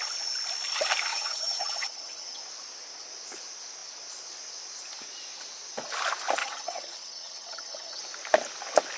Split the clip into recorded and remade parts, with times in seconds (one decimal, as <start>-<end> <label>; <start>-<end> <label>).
0.0-1.1 recorded; 1.1-2.4 remade; 2.4-6.4 recorded; 6.4-8.0 remade; 8.0-9.0 recorded